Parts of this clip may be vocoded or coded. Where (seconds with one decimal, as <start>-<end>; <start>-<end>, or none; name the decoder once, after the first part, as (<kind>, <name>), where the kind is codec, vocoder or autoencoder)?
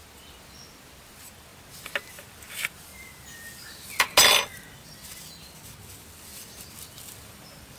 0.0-1.5 (vocoder, BigVGAN v2); 2.1-2.9; 5.8-6.3; 6.8-7.8